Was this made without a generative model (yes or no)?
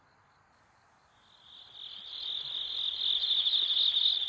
yes